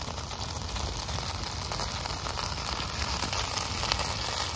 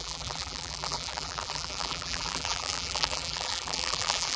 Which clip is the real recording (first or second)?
first